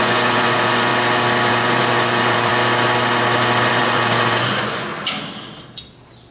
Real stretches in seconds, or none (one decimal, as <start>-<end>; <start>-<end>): 0.9-1.5; 2.5-3.7; 4.9-6.3